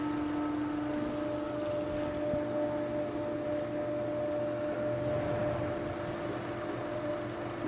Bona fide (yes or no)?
yes